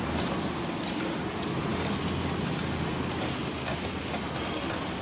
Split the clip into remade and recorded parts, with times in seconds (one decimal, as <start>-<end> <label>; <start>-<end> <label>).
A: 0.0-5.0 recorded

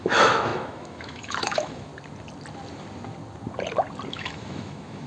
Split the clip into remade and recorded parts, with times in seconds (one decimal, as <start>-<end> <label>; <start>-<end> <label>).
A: 0.0-1.9 remade; 1.9-4.1 recorded; 4.1-5.1 remade

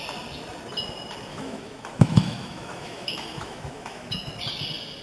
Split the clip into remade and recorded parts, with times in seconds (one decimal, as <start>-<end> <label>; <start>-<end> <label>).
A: 0.0-1.3 recorded; 1.3-4.3 remade; 4.3-5.0 recorded

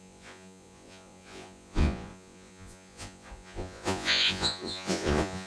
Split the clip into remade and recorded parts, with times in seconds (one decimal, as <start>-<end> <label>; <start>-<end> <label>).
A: 0.0-5.5 remade